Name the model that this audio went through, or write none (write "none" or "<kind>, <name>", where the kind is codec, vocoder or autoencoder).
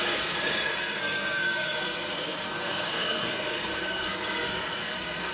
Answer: codec, SNAC